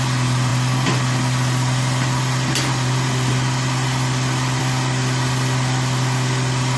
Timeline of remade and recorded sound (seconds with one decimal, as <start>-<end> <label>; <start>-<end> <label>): 0.0-6.8 recorded

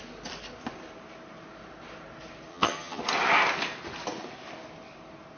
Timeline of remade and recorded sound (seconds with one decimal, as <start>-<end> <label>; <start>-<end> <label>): 0.0-2.5 recorded; 2.5-3.0 remade; 3.0-5.4 recorded

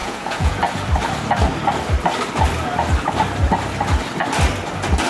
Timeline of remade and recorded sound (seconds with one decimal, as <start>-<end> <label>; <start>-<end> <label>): 0.0-0.6 remade; 0.6-5.1 recorded

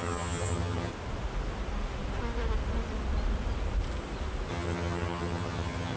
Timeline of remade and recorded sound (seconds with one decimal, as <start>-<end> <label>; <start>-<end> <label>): 0.0-0.9 remade; 0.9-4.5 recorded; 4.5-6.0 remade

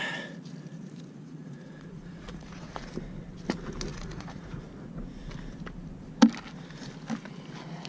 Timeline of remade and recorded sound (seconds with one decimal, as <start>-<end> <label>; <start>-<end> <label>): 0.0-1.2 recorded; 1.2-2.8 remade; 2.8-3.9 recorded; 3.9-4.6 remade; 4.6-7.9 recorded

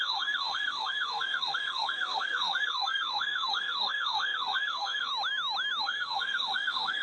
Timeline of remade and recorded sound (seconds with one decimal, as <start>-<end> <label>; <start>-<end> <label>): 0.0-5.1 remade; 5.1-5.8 recorded; 5.8-7.0 remade